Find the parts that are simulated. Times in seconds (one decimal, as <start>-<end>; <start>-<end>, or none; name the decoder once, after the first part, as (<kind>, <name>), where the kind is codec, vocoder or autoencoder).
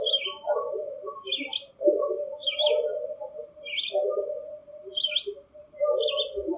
none